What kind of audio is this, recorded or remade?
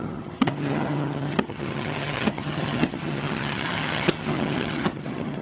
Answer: remade